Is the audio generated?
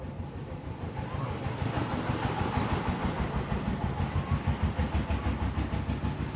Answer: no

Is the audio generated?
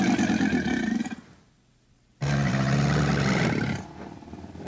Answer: no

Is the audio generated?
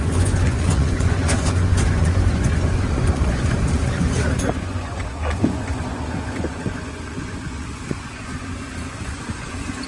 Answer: yes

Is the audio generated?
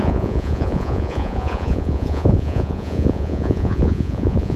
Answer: yes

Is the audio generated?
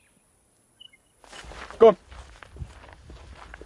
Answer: no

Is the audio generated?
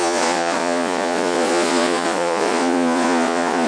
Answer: yes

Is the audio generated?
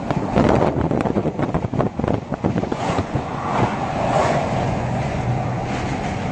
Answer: yes